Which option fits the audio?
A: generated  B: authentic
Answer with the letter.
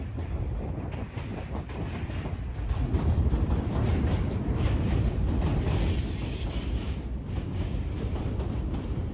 A